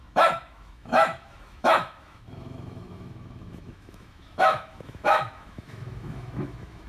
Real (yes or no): no